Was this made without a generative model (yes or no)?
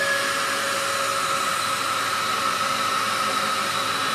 yes